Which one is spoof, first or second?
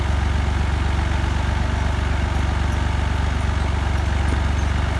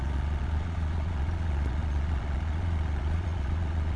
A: second